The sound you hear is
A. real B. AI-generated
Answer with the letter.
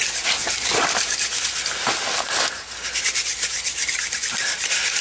A